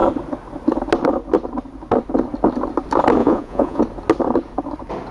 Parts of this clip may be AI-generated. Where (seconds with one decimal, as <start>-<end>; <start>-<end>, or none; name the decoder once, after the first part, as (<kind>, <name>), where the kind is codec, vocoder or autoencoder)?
3.2-3.8 (vocoder, Vocos)